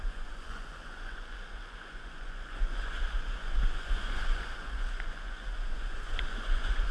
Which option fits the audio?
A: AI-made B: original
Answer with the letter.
A